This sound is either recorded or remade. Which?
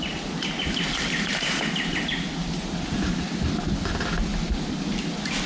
recorded